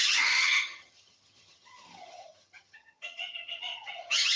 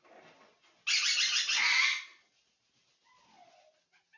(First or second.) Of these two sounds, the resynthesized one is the first